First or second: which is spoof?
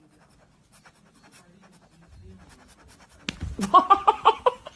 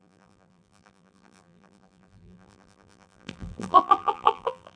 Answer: second